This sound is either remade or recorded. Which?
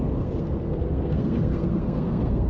remade